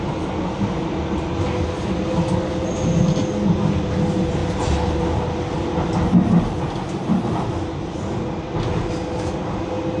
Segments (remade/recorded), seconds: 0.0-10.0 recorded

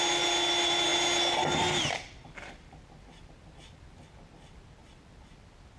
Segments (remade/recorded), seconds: 0.0-5.8 recorded

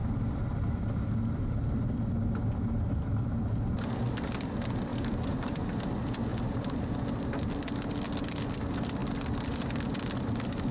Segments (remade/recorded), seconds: 0.0-4.9 recorded; 4.9-5.7 remade; 5.7-6.3 recorded; 6.3-6.9 remade; 6.9-10.7 recorded